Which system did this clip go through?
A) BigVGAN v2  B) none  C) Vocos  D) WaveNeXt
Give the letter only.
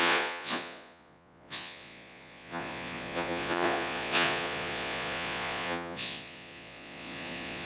C